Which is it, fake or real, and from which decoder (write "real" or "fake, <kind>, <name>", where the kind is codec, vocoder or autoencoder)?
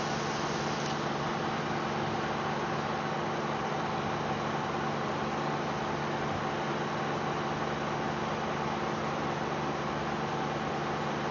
real